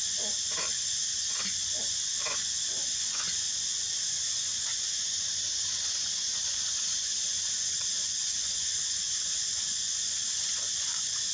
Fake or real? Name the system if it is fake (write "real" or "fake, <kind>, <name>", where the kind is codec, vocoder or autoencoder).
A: fake, vocoder, Vocos